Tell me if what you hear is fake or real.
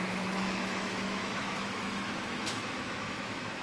fake